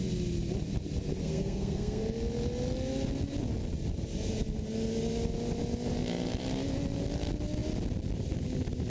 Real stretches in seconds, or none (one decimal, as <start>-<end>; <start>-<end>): 0.0-1.2; 2.0-8.9